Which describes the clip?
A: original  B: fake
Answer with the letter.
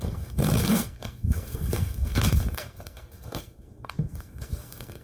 B